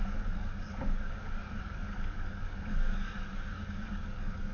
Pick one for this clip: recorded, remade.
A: remade